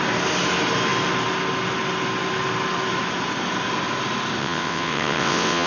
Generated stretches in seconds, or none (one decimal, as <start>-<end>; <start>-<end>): 4.4-5.7